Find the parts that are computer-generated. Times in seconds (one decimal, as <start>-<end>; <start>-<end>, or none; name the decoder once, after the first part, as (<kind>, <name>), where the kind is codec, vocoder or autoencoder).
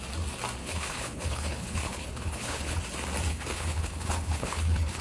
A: 0.6-2.8 (codec, HILCodec); 3.3-5.0